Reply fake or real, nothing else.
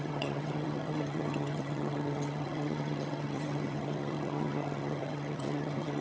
fake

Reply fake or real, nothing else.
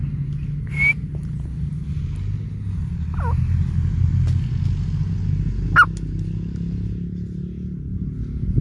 real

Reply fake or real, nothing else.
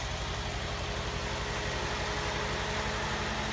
real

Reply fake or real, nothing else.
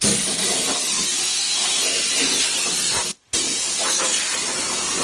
real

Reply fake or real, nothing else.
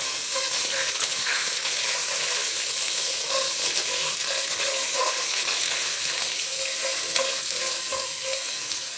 fake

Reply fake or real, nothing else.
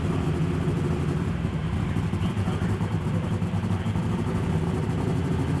real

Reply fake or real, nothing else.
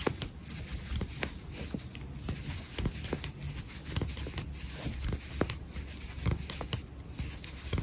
real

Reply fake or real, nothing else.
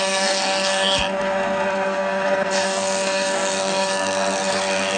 fake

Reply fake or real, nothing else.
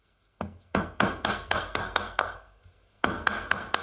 fake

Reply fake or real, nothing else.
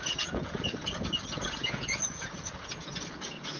fake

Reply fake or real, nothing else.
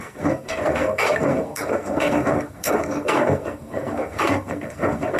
fake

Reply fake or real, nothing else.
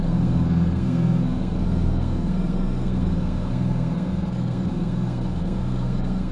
fake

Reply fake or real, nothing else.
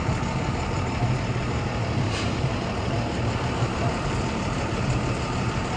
fake